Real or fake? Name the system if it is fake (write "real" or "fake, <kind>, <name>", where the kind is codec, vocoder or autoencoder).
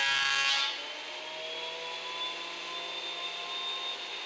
real